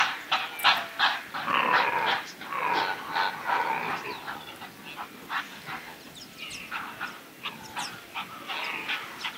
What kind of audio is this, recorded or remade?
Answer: recorded